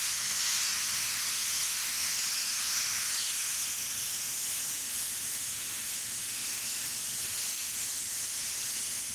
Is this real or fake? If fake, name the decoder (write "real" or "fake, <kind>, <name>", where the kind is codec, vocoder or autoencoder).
fake, autoencoder, DAC-VAE